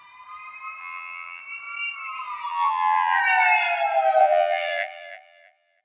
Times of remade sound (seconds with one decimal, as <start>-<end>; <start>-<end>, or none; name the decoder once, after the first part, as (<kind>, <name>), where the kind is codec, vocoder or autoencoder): 0.8-1.4 (vocoder, BigVGAN v2); 2.5-3.2; 4.2-5.8